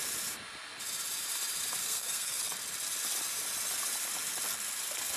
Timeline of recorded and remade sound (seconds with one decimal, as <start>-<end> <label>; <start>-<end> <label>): 0.0-1.8 recorded; 1.8-2.4 remade; 2.4-5.2 recorded